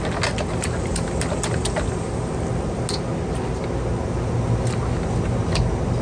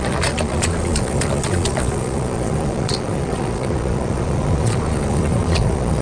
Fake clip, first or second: second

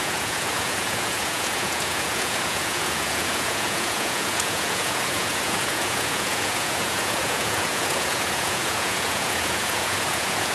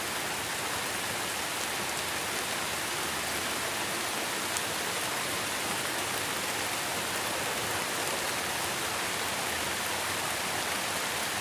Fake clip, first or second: first